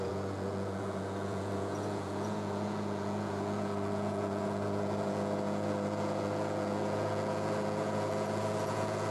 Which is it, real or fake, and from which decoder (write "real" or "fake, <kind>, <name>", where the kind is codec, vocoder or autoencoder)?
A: fake, vocoder, Vocos